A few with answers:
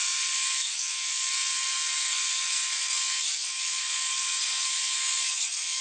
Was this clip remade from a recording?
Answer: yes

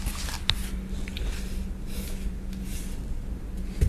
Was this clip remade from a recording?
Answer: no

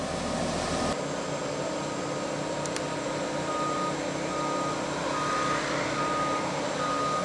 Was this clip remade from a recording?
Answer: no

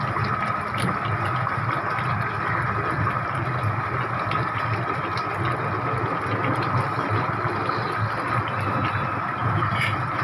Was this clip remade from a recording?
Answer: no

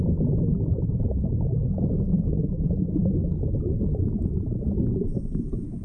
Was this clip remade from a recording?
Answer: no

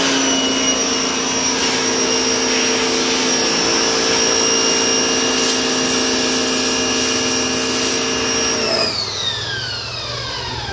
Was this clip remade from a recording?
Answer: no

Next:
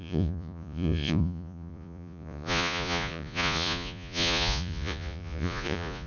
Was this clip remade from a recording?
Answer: yes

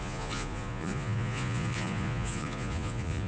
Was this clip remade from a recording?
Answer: yes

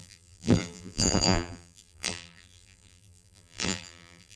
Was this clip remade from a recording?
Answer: yes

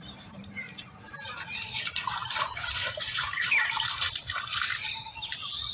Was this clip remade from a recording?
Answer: yes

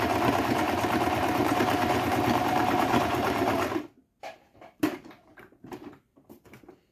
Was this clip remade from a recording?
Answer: yes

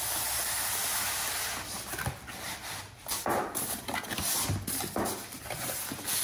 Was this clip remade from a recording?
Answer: no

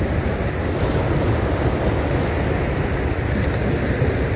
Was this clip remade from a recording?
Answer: no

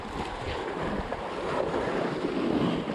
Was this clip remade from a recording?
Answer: no